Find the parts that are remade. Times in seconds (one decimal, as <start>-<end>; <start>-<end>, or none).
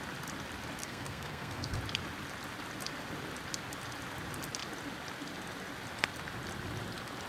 0.8-1.8